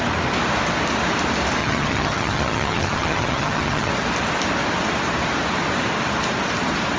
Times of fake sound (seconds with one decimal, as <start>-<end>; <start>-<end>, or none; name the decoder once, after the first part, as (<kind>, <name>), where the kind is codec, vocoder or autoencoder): 1.6-3.9 (vocoder, HiFi-GAN)